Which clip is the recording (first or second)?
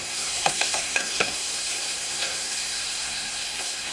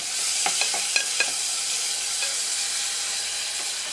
second